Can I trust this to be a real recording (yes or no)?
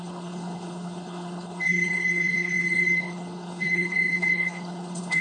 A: no